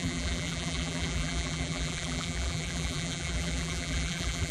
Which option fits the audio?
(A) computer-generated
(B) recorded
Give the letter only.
A